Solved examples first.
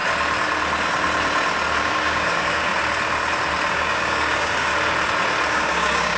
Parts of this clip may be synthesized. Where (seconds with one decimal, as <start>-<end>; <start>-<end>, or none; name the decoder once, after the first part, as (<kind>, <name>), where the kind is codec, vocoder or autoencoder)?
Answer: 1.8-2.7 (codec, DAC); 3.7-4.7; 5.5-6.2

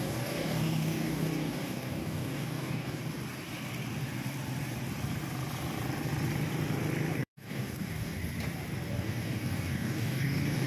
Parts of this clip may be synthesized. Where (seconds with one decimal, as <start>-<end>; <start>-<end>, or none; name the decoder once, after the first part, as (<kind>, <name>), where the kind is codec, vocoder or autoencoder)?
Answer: 0.0-3.0 (codec, DAC); 7.1-8.2; 8.9-10.7

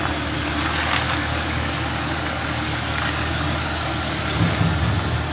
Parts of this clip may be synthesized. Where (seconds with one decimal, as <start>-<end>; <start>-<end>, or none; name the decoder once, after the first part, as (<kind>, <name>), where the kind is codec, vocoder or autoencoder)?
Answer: 1.2-4.4 (codec, DAC)